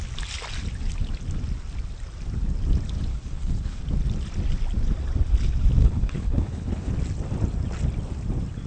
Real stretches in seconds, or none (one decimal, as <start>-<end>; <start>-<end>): 0.0-3.1; 3.8-5.8; 6.9-8.7